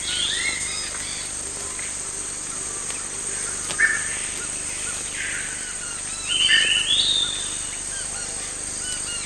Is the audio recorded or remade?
recorded